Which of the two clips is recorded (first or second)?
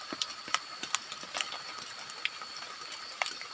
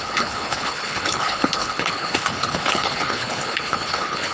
first